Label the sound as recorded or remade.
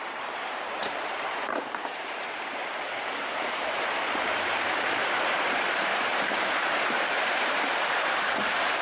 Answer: remade